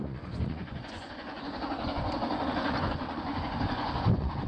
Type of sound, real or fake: fake